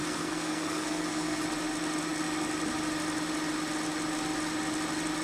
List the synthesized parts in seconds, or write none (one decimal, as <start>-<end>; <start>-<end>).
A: 0.0-1.4